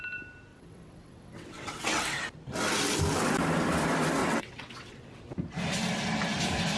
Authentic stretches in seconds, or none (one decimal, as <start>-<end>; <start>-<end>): 0.0-0.5; 2.2-4.2; 5.2-6.8

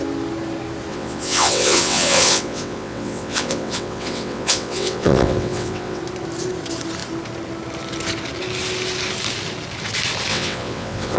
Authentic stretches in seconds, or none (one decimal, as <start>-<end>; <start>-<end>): 0.0-0.9; 6.0-10.3

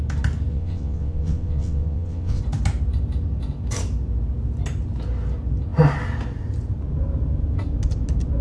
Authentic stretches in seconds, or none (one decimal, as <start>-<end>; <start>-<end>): 0.0-0.5; 2.4-8.4